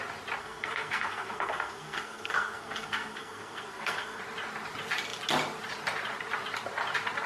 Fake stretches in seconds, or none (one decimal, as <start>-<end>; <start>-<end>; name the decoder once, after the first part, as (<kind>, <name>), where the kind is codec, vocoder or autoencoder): 0.4-4.2 (codec, SNAC)